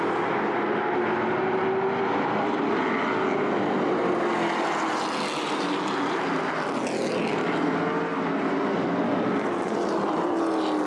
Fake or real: real